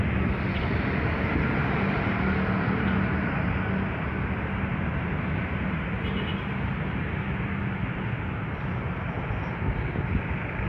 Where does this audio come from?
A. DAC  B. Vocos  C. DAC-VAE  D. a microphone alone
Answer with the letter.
D